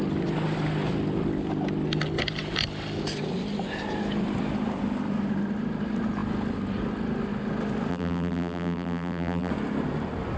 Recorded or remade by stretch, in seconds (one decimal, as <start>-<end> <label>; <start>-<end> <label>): 0.0-7.9 recorded; 7.9-9.5 remade; 9.5-10.4 recorded